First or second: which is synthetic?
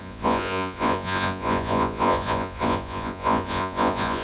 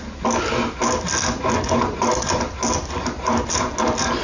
first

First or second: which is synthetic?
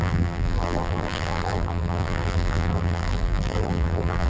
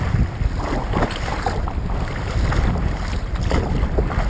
first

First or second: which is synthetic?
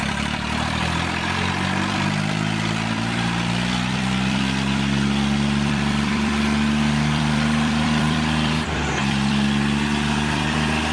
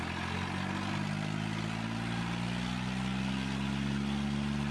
first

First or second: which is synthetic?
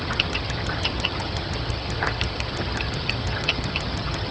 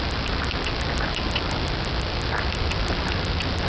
first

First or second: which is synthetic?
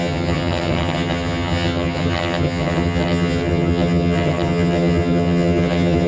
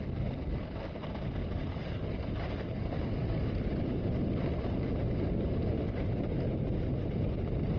first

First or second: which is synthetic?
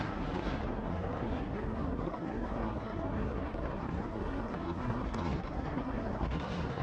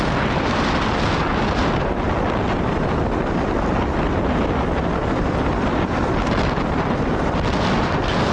first